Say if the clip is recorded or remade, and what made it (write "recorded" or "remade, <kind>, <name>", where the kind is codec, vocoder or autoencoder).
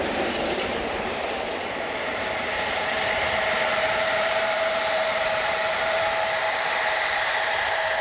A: remade, vocoder, BigVGAN v2